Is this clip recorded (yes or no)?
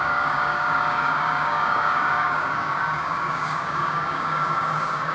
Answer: no